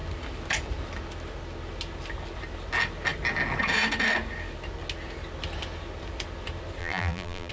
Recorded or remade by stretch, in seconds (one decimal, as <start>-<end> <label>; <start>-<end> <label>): 0.0-6.8 recorded; 6.8-7.5 remade